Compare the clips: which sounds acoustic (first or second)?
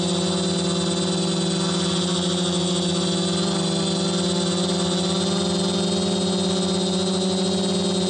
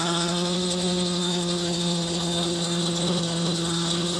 first